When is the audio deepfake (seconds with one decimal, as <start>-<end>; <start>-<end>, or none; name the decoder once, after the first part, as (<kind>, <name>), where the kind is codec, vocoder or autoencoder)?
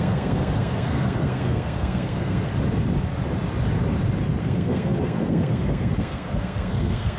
0.0-2.5 (codec, SNAC); 4.4-7.2